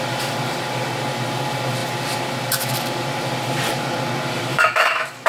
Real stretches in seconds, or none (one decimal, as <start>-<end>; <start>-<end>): 0.0-4.5